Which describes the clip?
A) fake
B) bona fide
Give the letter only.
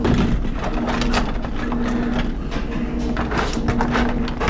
B